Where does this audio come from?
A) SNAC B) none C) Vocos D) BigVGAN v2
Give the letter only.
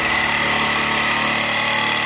B